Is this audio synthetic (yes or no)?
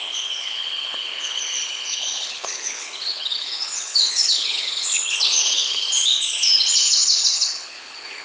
yes